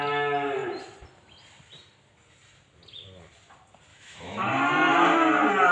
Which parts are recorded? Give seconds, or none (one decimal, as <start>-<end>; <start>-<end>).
0.0-3.9; 4.5-5.7